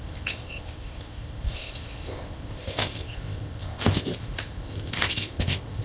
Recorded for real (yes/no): no